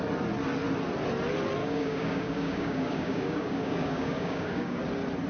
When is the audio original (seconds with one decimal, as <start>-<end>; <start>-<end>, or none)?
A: 0.0-1.6; 4.8-5.3